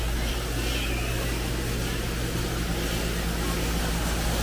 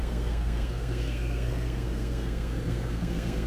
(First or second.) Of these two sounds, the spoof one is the second